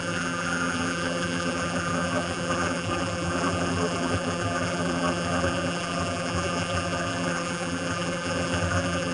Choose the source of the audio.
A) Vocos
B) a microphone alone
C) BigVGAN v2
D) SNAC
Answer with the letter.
C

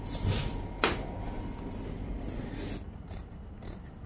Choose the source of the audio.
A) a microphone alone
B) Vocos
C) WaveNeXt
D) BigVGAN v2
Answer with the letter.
A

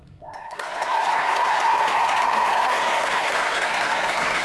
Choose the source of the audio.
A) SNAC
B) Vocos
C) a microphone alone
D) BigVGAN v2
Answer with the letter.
A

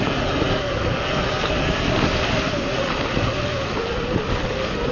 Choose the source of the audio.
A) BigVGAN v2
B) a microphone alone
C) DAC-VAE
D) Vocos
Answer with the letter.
B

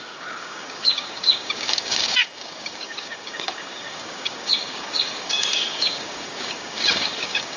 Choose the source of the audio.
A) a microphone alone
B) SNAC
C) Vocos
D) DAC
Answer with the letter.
D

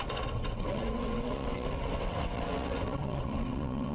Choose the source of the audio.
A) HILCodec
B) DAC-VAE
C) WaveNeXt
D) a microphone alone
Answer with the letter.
C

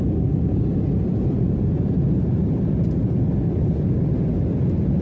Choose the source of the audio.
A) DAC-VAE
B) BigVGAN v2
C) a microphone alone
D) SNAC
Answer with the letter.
C